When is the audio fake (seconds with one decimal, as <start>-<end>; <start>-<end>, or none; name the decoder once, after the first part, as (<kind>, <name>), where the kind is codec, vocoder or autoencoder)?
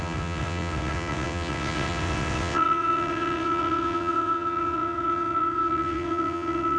0.0-6.8 (vocoder, WaveNeXt)